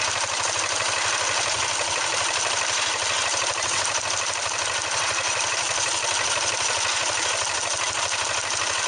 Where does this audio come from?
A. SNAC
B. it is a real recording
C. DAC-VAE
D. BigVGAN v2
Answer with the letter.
B